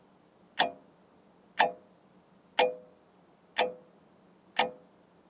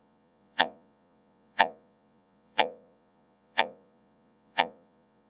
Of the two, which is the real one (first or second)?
first